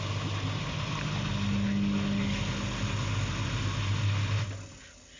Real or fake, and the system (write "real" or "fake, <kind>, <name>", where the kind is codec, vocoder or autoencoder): real